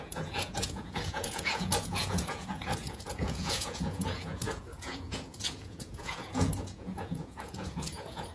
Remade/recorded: remade